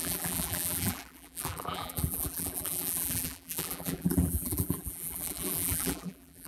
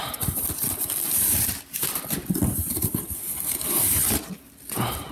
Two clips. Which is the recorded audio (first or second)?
second